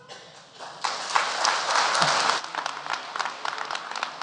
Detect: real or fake real